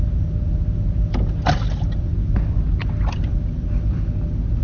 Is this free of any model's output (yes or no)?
yes